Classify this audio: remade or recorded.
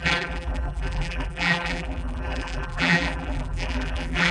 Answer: remade